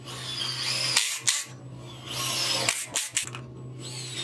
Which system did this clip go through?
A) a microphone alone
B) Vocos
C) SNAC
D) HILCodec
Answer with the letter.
A